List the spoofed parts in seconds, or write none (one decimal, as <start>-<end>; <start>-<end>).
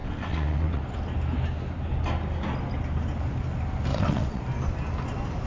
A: 0.0-0.8; 3.9-4.4